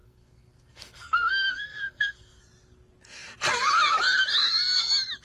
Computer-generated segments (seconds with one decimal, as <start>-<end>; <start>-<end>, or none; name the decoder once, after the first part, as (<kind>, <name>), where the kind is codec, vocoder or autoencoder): 0.0-2.4 (codec, SNAC)

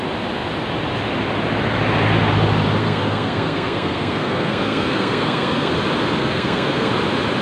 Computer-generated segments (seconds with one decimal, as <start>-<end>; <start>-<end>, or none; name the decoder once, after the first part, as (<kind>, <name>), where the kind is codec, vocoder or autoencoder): 2.8-5.7 (codec, SNAC); 6.2-6.9

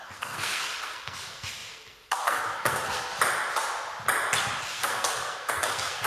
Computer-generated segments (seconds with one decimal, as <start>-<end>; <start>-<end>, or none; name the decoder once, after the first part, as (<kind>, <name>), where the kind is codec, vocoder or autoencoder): 0.0-3.1 (codec, SNAC); 4.6-6.1

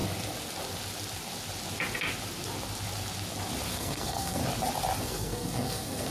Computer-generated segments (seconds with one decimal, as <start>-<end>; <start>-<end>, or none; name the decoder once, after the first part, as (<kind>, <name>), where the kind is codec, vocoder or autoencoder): 3.7-4.4 (codec, SNAC); 5.0-6.1

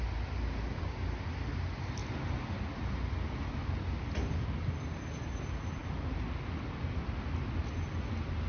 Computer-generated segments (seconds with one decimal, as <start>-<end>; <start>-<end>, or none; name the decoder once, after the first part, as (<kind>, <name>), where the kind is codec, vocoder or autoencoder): none

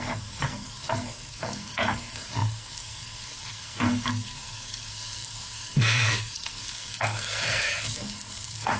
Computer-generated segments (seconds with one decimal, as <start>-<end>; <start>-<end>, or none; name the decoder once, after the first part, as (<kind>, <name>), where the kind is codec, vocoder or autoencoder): 0.0-8.8 (codec, SNAC)

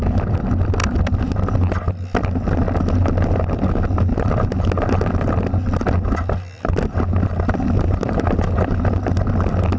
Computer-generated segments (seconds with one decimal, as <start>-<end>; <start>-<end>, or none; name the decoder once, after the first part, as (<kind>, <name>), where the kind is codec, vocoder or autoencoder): none